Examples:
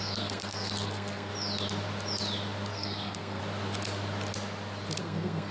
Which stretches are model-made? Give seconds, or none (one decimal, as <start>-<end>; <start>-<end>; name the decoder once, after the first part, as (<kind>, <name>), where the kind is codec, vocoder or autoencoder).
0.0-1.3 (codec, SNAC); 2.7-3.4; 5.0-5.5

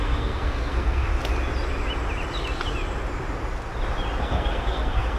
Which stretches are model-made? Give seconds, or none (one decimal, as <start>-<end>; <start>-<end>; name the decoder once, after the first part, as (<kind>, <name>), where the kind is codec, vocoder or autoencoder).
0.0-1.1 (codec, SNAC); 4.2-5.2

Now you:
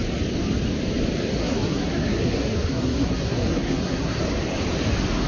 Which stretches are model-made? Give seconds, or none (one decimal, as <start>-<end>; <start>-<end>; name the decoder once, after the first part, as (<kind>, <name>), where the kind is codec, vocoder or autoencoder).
1.4-4.2 (codec, SNAC)

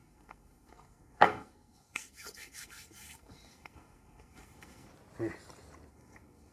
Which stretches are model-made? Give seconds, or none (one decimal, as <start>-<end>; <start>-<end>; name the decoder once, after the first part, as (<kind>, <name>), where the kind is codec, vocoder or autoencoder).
0.0-4.9 (codec, SNAC); 5.9-6.5

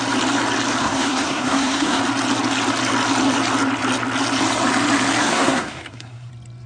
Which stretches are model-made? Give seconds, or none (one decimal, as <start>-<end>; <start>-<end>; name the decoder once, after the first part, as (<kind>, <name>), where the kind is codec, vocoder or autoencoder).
0.8-2.0 (codec, SNAC); 5.2-6.3